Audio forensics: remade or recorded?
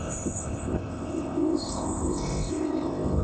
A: remade